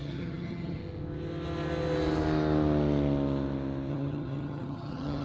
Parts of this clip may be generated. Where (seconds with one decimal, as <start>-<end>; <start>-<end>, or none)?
0.0-0.8; 3.9-5.2